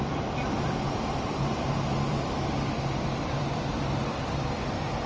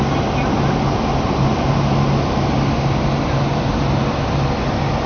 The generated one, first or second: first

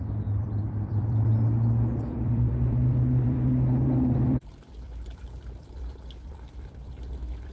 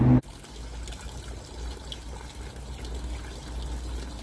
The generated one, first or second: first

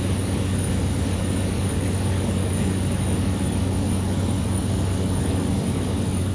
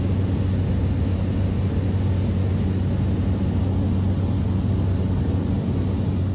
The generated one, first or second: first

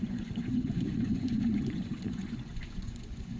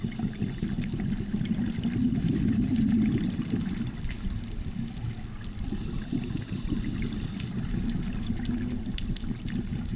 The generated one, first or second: first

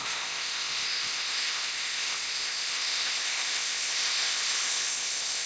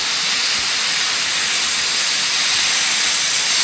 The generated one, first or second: first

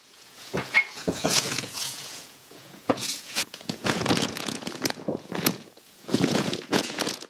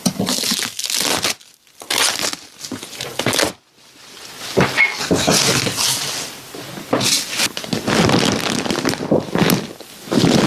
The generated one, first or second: first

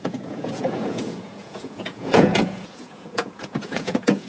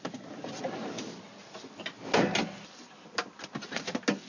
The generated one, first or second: first